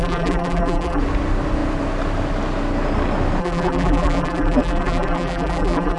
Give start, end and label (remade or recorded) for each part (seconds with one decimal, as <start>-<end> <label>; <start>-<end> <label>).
0.0-1.0 remade; 1.0-3.4 recorded; 3.4-6.0 remade